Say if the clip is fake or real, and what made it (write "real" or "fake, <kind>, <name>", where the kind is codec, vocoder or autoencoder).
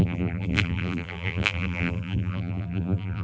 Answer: fake, vocoder, BigVGAN v2